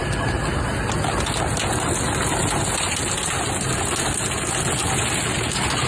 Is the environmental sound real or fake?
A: real